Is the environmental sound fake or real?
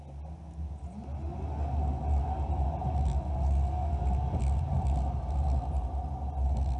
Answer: real